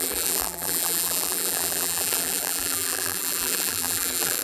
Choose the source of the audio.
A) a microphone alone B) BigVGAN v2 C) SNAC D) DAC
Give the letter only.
B